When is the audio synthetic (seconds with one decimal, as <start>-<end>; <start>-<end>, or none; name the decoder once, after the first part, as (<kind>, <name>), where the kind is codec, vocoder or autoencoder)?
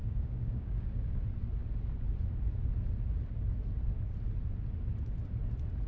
0.0-1.2 (codec, DAC)